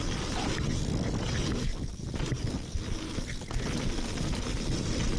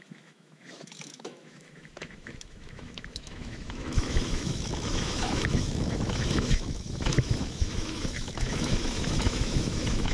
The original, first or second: first